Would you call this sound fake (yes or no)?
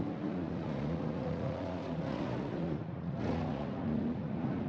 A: yes